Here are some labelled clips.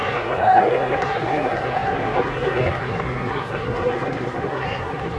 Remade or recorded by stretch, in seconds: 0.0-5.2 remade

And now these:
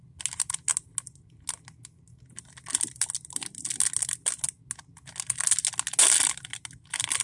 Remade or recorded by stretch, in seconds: 0.0-7.2 recorded

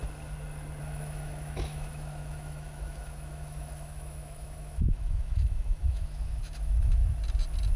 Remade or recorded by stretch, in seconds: 0.0-0.9 recorded; 0.9-7.0 remade; 7.0-7.8 recorded

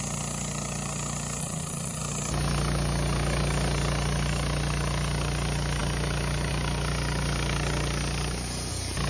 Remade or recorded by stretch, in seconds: 0.0-1.4 recorded; 1.4-2.0 remade; 2.0-9.1 recorded